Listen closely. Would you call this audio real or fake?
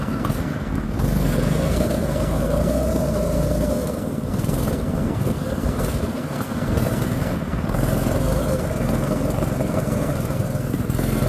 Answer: fake